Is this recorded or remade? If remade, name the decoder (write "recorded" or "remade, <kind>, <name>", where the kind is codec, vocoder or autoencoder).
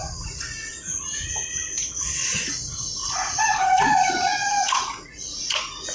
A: remade, vocoder, Vocos